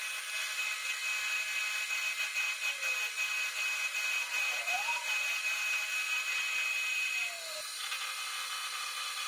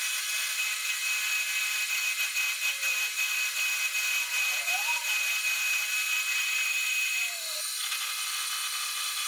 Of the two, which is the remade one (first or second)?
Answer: second